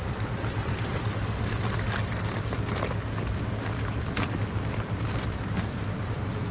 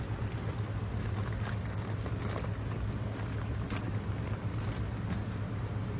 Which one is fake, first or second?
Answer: first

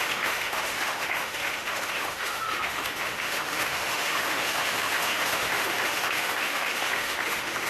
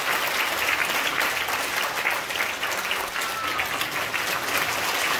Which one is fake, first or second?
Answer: first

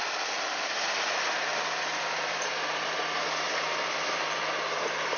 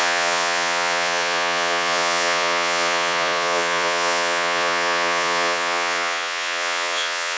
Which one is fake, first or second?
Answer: second